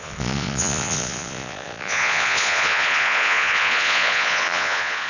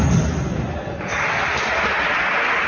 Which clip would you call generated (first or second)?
first